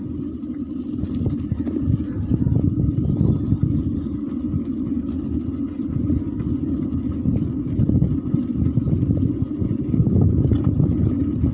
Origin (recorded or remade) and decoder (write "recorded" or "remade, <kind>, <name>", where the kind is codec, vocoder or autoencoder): recorded